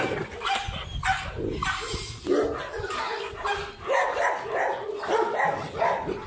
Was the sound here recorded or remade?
recorded